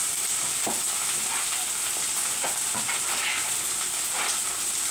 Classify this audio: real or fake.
real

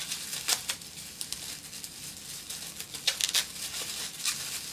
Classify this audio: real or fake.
real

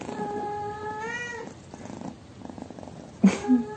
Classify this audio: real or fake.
real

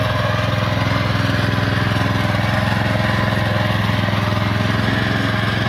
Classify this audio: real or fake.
real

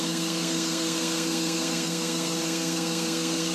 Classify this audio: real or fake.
fake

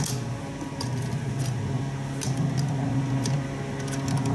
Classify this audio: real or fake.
real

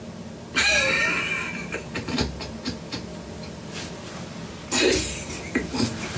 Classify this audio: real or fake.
real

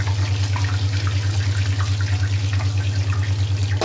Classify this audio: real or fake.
real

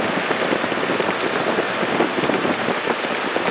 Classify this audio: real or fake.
real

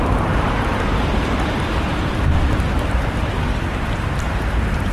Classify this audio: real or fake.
fake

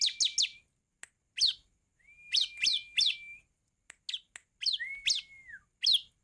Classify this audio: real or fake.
real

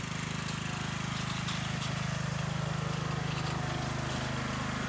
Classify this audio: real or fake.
real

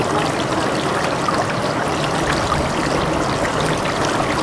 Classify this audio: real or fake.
real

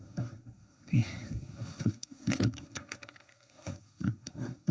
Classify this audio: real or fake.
fake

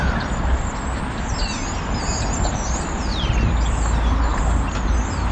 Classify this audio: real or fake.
real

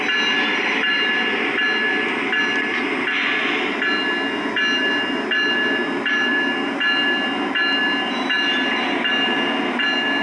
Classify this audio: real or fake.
real